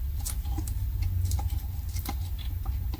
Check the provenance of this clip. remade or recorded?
recorded